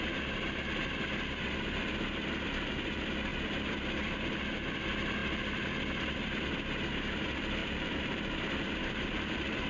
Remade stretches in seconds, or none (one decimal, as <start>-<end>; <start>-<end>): 7.6-9.7